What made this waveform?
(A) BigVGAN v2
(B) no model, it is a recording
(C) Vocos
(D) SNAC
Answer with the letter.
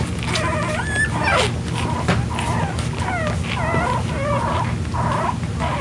B